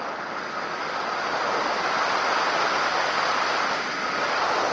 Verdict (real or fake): real